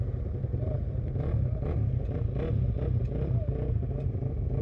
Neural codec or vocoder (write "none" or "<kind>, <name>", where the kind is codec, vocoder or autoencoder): none